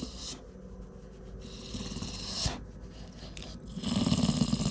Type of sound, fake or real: real